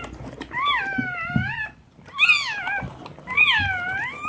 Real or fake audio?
real